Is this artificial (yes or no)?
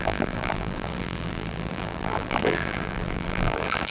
yes